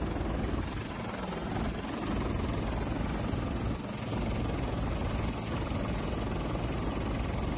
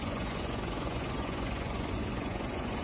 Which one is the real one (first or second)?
first